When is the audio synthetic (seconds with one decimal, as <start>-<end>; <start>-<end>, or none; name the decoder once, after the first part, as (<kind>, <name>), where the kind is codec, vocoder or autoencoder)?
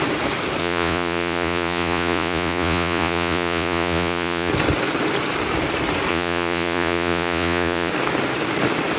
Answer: 0.6-4.5 (vocoder, Vocos); 6.1-7.9